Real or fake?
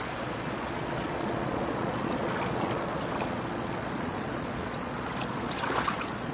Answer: fake